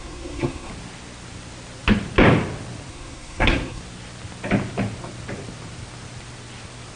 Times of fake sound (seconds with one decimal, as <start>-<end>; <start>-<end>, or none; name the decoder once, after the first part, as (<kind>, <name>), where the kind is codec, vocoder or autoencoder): 0.0-0.7 (codec, SNAC); 2.9-3.8